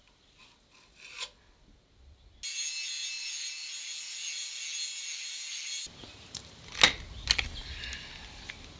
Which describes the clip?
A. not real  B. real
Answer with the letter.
B